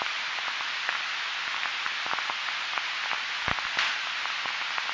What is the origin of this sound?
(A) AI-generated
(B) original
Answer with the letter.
B